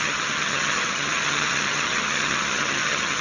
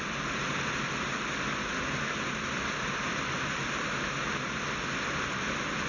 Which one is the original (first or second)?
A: second